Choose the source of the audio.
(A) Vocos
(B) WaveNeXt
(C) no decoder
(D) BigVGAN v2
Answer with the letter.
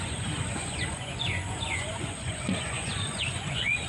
A